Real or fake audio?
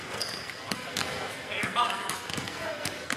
fake